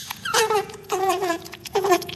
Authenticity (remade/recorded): remade